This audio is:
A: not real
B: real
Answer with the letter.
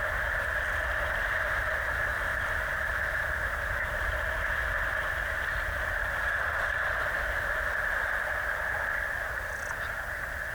B